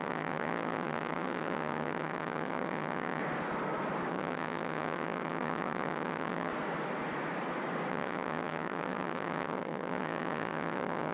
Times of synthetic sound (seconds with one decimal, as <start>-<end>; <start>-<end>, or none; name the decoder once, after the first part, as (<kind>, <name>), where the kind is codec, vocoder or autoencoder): 0.0-3.2 (vocoder, HiFi-GAN); 4.1-6.5; 7.9-11.1